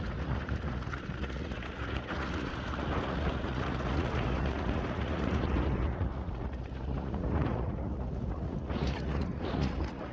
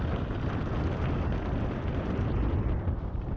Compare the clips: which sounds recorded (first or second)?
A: second